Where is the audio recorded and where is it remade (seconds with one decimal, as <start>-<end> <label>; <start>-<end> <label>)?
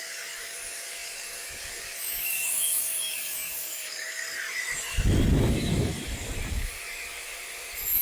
0.0-4.2 remade; 4.2-5.5 recorded; 5.5-5.9 remade; 5.9-6.5 recorded; 6.5-8.0 remade